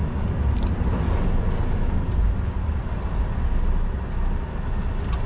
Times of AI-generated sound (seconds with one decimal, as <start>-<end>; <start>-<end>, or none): none